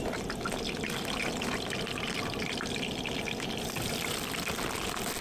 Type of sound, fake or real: real